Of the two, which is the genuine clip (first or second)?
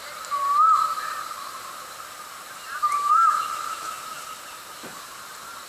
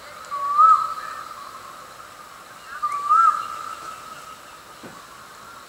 second